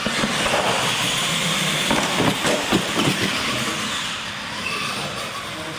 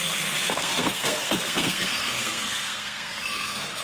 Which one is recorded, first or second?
first